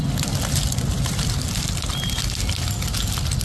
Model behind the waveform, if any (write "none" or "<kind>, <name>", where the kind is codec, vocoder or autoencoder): none